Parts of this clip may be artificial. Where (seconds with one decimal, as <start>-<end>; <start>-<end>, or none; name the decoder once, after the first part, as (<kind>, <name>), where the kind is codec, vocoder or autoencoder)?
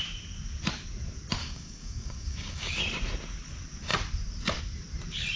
1.4-2.8 (codec, DAC)